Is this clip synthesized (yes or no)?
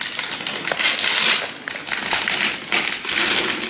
no